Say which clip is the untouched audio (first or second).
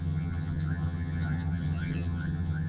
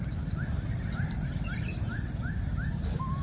second